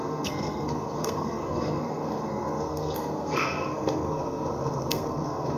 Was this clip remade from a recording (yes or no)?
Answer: yes